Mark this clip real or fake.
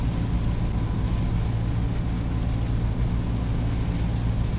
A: real